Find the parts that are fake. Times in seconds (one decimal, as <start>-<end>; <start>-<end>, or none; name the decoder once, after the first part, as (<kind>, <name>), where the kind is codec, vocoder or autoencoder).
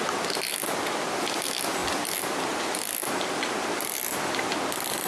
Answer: 1.8-2.6 (vocoder, BigVGAN v2)